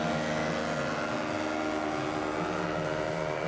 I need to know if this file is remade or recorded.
recorded